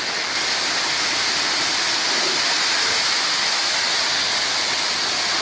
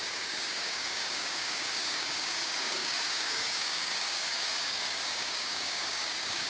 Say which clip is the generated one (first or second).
second